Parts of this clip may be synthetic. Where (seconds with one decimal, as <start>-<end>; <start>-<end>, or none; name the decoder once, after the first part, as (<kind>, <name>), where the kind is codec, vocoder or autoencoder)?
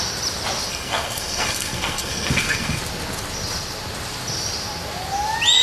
0.7-2.8 (codec, SNAC)